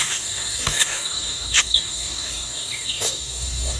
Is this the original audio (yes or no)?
no